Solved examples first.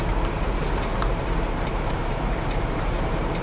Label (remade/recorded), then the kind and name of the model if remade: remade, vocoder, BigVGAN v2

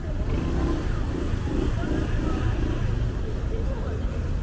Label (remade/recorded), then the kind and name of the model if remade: recorded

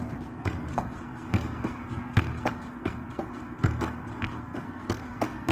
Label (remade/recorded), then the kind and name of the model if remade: remade, codec, SNAC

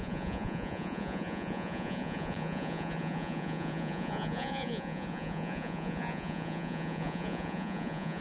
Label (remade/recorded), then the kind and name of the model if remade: remade, vocoder, Vocos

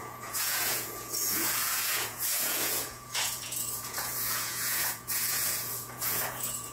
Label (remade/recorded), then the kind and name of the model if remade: remade, vocoder, Vocos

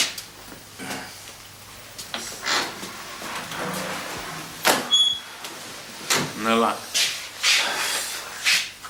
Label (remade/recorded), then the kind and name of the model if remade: recorded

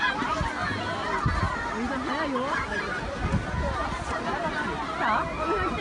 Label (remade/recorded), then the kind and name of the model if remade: recorded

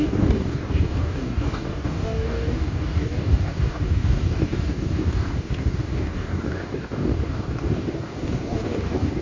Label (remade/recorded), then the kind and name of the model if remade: remade, codec, DAC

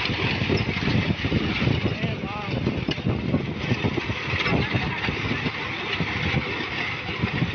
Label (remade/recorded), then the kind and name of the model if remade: recorded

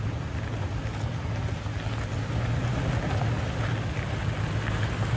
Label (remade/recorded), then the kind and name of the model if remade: recorded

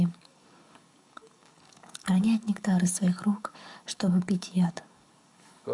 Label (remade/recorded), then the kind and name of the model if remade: remade, codec, DAC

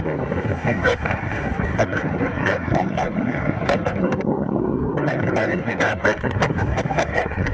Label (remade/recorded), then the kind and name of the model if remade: remade, codec, SNAC